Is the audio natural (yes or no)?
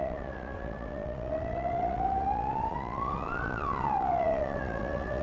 no